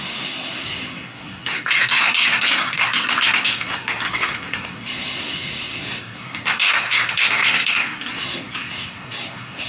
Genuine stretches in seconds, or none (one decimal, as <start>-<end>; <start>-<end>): none